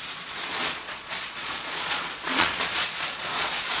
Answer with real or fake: fake